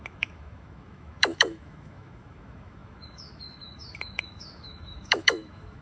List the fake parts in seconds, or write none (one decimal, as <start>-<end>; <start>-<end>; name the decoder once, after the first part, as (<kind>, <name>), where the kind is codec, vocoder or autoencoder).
0.0-5.8 (autoencoder, DAC-VAE)